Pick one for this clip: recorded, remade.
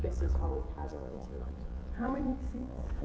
remade